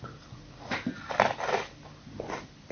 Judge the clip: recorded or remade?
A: recorded